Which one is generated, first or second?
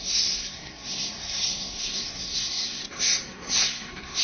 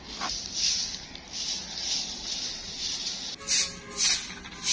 first